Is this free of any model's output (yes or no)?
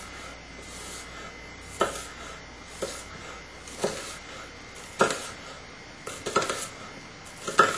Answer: yes